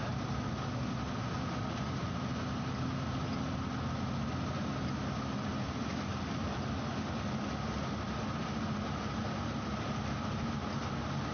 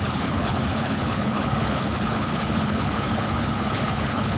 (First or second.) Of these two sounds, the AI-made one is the second